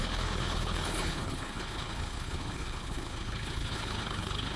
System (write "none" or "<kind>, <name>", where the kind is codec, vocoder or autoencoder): codec, HILCodec